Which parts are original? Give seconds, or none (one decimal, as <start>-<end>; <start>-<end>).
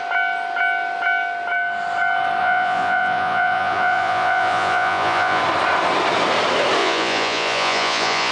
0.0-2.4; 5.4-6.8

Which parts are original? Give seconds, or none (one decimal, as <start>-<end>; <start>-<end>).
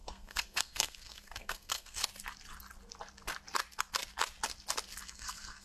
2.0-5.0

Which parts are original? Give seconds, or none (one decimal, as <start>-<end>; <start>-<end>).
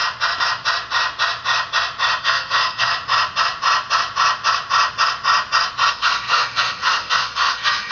0.0-2.2; 2.9-5.9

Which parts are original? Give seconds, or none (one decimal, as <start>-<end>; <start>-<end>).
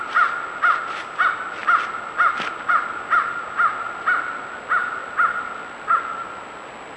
0.0-7.0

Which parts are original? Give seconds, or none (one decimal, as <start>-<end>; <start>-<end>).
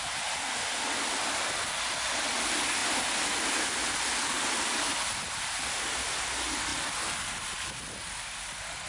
0.0-8.9